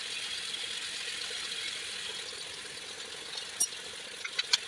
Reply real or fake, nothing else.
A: real